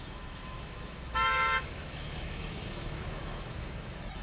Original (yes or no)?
no